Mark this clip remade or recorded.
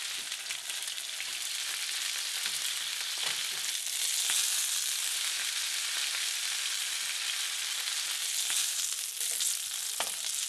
recorded